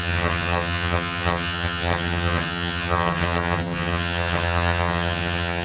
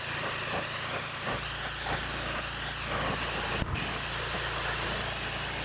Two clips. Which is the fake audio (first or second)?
first